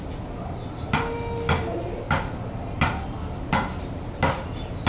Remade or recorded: recorded